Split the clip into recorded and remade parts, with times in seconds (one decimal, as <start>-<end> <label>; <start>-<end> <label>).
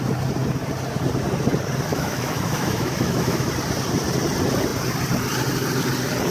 0.0-1.9 recorded; 1.9-3.5 remade; 3.5-6.3 recorded